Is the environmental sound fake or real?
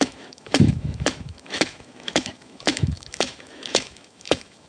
fake